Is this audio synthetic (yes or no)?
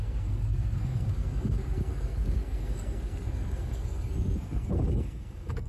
yes